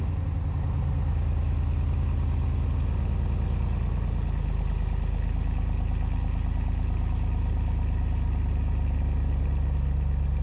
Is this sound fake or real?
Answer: real